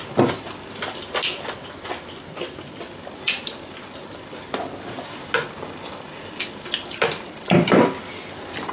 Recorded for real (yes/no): yes